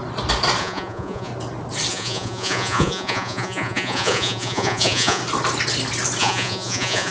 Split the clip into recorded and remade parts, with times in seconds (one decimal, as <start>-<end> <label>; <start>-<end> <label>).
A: 0.0-0.6 recorded; 0.6-1.3 remade; 1.3-1.9 recorded; 1.9-5.2 remade; 5.2-6.2 recorded; 6.2-7.1 remade